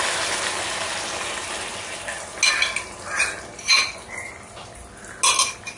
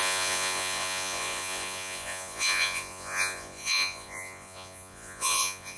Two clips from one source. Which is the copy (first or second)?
second